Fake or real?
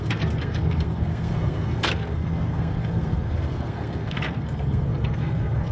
fake